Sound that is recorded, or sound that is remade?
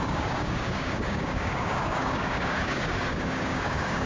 remade